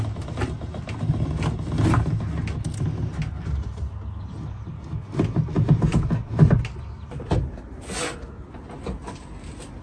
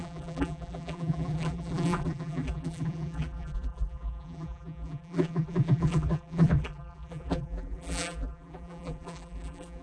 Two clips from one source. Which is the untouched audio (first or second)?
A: first